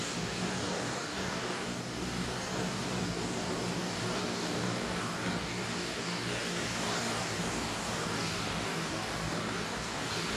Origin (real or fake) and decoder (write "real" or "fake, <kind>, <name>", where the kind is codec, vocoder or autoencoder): fake, codec, DAC